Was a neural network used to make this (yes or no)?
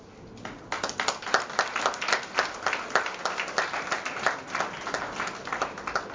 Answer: no